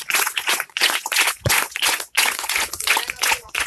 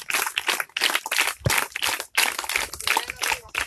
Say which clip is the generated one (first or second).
first